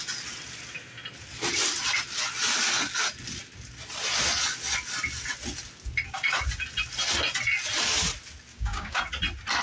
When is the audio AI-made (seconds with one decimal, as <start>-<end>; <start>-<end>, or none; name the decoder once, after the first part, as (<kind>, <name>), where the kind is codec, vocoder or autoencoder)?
8.5-9.0 (codec, DAC)